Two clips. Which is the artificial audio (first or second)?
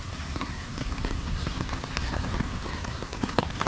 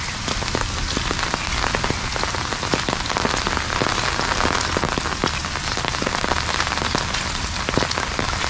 first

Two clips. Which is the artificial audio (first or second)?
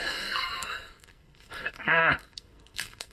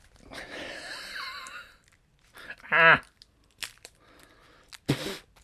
first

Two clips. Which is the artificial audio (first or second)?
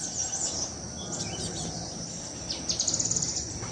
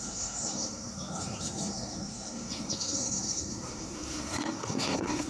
second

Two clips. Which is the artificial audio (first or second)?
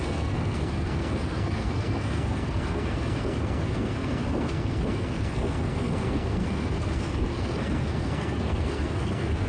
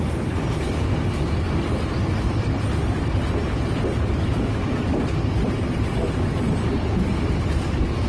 first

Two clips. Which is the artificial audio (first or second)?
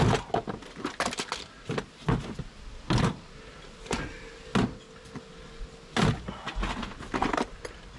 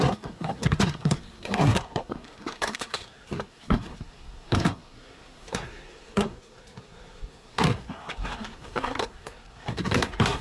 second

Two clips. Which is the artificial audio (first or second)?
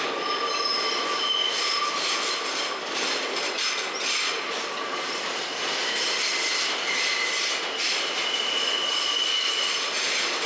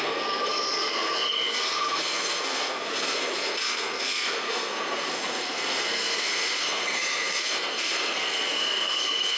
second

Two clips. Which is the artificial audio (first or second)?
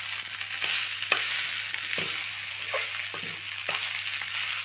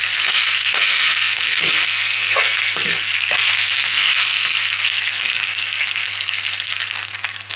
second